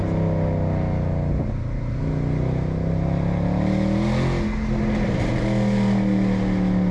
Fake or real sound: real